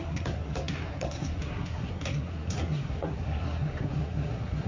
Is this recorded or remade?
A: remade